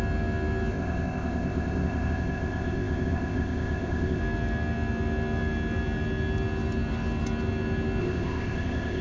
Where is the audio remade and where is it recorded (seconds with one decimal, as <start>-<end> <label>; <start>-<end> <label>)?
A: 0.0-0.7 recorded; 0.7-4.2 remade; 4.2-8.0 recorded; 8.0-9.0 remade